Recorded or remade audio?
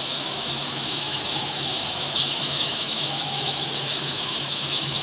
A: remade